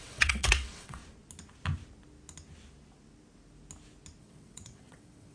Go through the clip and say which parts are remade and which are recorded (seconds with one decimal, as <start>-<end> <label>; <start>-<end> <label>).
0.0-1.0 remade; 1.0-4.2 recorded; 4.2-5.3 remade

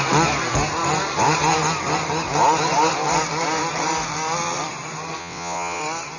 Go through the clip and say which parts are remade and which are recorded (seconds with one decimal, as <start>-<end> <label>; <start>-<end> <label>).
0.0-5.2 recorded; 5.2-5.8 remade; 5.8-6.2 recorded

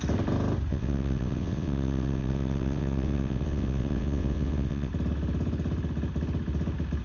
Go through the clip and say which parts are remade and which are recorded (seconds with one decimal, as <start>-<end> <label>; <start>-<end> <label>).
0.0-0.7 recorded; 0.7-4.9 remade; 4.9-7.0 recorded

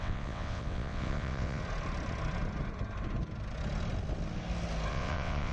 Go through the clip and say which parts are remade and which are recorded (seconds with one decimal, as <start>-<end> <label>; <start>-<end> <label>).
0.0-1.6 remade; 1.6-4.9 recorded; 4.9-5.5 remade

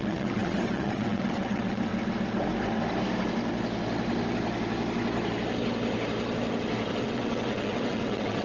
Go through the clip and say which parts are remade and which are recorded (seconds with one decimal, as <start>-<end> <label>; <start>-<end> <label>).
0.0-1.9 remade; 1.9-6.9 recorded; 6.9-8.4 remade